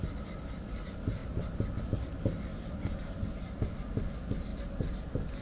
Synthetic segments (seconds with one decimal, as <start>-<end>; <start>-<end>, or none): 2.5-3.6